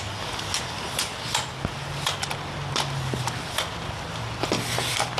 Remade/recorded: recorded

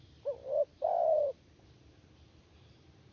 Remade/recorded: remade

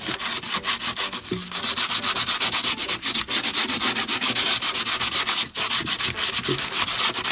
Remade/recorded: recorded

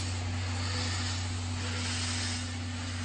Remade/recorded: recorded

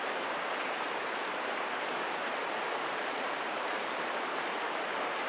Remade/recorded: remade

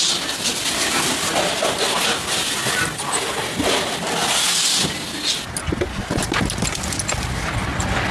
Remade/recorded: recorded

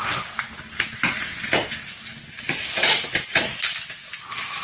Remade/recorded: recorded